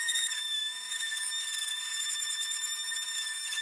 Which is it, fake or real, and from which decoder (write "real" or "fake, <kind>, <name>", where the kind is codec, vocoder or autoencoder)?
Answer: fake, autoencoder, DAC-VAE